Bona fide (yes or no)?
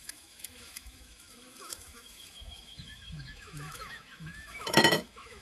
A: no